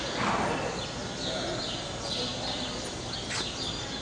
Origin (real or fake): real